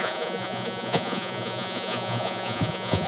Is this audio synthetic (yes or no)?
yes